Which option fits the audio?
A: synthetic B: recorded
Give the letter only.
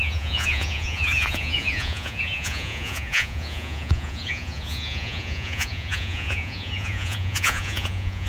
A